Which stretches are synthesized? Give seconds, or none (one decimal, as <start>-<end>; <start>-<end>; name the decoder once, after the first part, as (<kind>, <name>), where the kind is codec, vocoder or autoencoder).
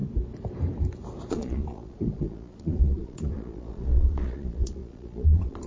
1.3-5.7 (vocoder, Vocos)